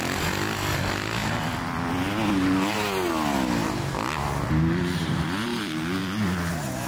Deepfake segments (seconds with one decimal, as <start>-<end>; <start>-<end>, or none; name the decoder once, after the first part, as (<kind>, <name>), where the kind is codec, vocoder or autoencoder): none